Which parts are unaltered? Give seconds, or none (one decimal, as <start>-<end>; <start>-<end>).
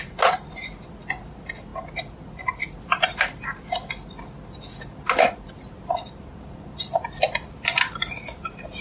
0.0-8.8